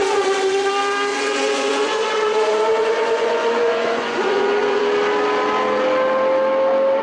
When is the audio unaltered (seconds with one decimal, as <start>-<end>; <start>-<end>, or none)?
0.7-1.1; 4.8-7.0